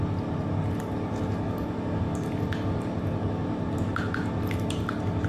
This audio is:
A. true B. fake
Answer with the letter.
A